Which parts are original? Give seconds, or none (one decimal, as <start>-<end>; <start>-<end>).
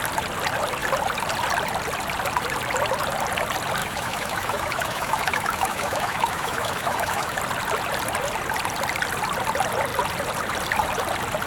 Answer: 0.0-3.8; 7.4-11.5